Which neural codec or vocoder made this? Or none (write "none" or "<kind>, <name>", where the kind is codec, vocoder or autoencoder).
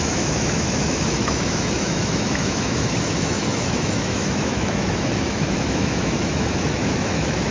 autoencoder, DAC-VAE